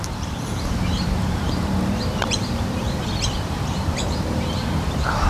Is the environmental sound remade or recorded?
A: remade